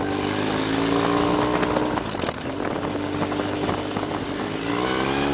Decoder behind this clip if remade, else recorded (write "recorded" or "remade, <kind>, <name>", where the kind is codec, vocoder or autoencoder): recorded